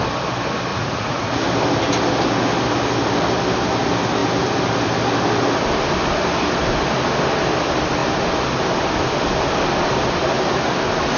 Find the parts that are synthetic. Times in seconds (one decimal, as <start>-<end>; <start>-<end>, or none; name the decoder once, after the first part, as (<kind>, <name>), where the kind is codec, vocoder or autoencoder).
0.7-1.4 (vocoder, Vocos)